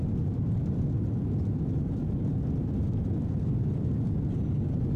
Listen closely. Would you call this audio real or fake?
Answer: real